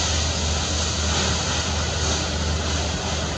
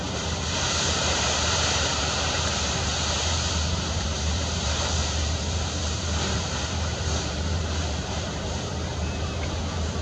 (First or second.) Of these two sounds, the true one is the first